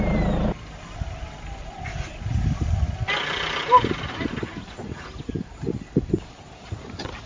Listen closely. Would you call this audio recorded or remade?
recorded